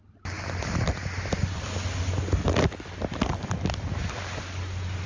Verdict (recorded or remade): recorded